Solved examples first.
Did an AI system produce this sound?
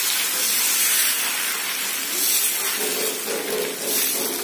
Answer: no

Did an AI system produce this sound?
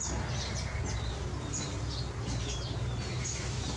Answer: no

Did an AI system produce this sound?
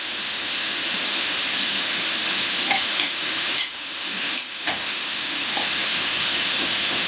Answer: yes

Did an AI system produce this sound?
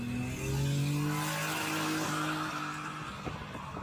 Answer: no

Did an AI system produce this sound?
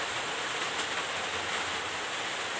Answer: no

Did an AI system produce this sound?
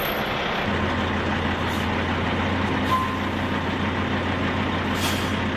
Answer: no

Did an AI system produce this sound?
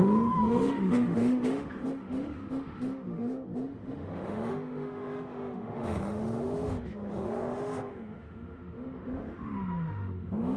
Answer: yes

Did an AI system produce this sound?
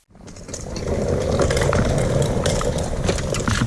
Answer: no